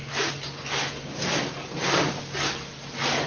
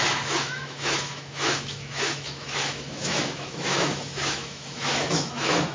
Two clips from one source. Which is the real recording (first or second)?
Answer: first